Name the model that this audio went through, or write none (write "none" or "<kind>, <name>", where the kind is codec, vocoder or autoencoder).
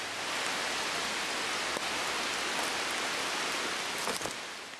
none